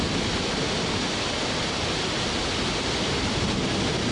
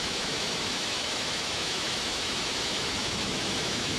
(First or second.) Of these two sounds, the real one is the first